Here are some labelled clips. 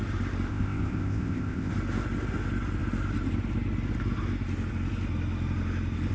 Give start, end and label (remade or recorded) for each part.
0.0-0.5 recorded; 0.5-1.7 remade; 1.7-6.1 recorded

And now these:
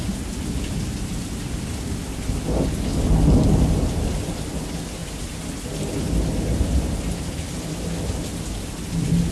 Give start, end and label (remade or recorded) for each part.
0.0-9.3 recorded

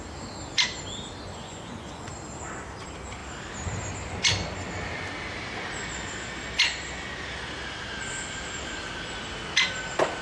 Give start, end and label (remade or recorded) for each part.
0.0-1.3 recorded; 1.3-2.1 remade; 2.1-10.2 recorded

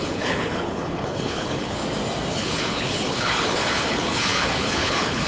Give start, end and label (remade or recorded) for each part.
0.0-1.8 remade; 1.8-2.3 recorded; 2.3-5.3 remade

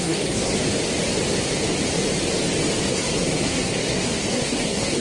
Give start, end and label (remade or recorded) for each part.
0.0-0.5 remade; 0.5-2.9 recorded; 2.9-5.0 remade

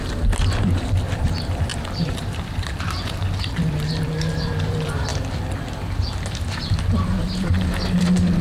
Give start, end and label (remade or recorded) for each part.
0.0-5.1 remade; 5.1-8.4 recorded